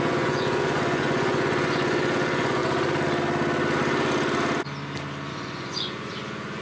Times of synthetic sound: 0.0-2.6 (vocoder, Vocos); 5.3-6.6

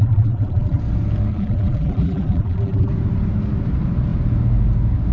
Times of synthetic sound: 0.0-0.8 (vocoder, BigVGAN v2); 1.3-2.9

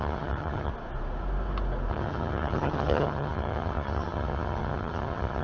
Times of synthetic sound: 0.0-0.7 (vocoder, HiFi-GAN); 1.9-5.4

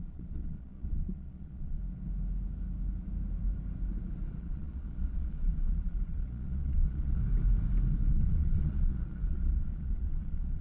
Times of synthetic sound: 0.0-1.8 (vocoder, Vocos); 4.4-7.2; 8.1-10.6

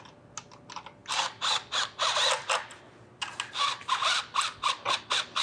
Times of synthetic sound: none